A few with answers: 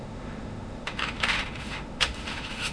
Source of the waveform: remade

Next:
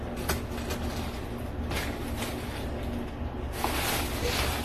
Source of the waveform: recorded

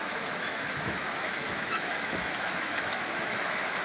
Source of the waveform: remade